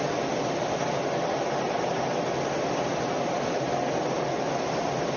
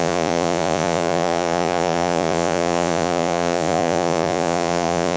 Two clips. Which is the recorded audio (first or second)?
first